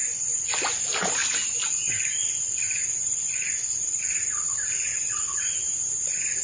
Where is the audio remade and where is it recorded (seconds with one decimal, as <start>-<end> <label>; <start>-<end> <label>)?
0.0-0.5 remade; 0.5-1.2 recorded; 1.2-4.0 remade; 4.0-4.9 recorded; 4.9-5.4 remade; 5.4-6.4 recorded

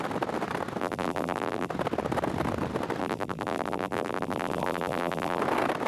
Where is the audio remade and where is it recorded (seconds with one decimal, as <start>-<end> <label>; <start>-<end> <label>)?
0.0-0.8 recorded; 0.8-1.7 remade; 1.7-3.0 recorded; 3.0-5.4 remade; 5.4-5.9 recorded

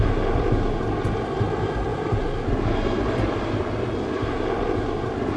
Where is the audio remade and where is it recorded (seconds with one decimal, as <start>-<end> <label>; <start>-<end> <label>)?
0.0-5.4 recorded

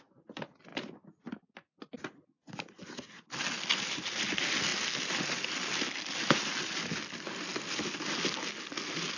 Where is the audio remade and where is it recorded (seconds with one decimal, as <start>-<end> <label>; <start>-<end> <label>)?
0.0-9.2 recorded

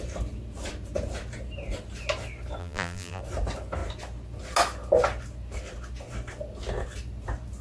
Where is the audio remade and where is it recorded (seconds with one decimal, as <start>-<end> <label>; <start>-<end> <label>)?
0.0-2.6 recorded; 2.6-3.2 remade; 3.2-7.6 recorded

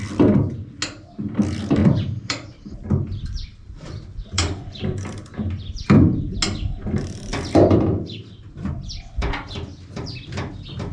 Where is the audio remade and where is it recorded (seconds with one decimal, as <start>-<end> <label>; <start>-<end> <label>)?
0.0-1.8 recorded; 1.8-6.2 remade; 6.2-7.3 recorded; 7.3-8.7 remade; 8.7-10.9 recorded

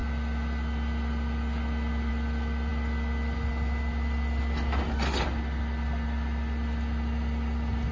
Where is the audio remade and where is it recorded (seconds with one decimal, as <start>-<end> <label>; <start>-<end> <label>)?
0.0-7.9 recorded